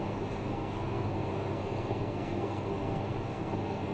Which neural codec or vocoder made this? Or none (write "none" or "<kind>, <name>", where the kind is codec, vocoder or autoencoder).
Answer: codec, SNAC